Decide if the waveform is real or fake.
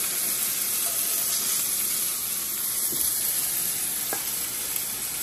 real